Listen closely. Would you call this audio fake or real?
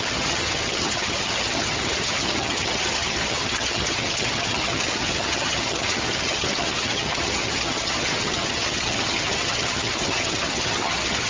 fake